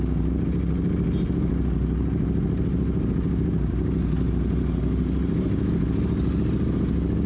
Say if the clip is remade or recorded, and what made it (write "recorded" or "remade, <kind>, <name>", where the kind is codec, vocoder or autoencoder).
recorded